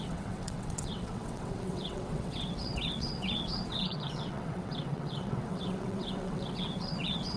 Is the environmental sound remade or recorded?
remade